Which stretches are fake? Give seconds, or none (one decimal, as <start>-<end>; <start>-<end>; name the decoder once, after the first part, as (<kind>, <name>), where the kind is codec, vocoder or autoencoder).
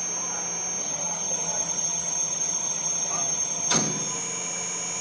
0.8-3.8 (vocoder, HiFi-GAN)